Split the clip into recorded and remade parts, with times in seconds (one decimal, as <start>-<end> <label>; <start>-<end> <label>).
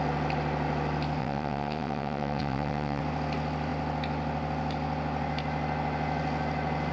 0.0-1.2 recorded; 1.2-3.0 remade; 3.0-6.9 recorded